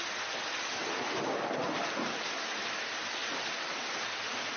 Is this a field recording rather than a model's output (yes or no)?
yes